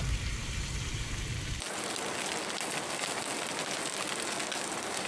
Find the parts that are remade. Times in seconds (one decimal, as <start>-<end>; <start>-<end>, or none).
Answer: none